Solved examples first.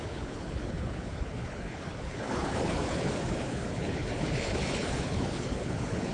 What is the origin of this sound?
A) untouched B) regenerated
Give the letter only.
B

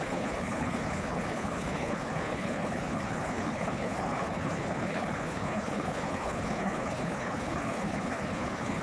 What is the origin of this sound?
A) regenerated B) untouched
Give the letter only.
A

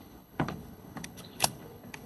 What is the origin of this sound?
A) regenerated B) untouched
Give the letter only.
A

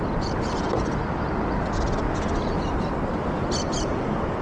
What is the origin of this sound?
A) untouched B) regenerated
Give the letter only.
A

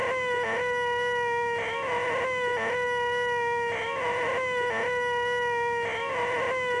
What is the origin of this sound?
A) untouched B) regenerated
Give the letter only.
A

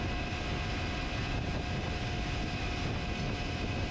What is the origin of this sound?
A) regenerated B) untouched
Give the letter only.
B